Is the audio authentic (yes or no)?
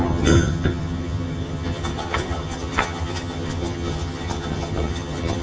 no